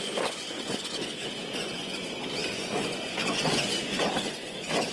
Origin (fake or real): fake